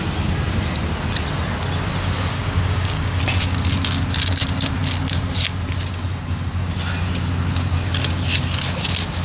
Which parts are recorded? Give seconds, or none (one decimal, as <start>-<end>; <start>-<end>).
0.0-2.3; 3.2-9.2